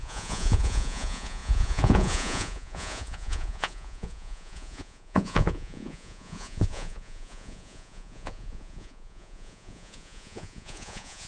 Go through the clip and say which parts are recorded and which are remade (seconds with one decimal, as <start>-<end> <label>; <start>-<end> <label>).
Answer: 0.0-11.3 remade